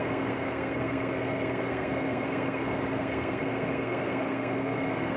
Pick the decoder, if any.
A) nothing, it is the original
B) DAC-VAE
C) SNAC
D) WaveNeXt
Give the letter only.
C